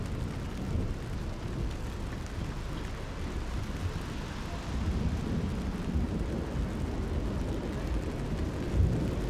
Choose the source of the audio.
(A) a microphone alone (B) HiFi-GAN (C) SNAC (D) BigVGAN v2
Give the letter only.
A